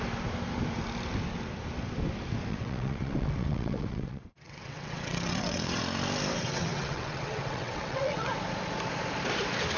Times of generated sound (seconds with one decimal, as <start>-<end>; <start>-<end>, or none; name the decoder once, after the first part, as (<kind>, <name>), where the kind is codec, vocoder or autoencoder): 2.5-5.8 (vocoder, WaveNeXt); 6.3-8.3